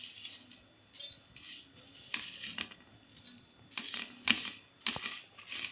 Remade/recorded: recorded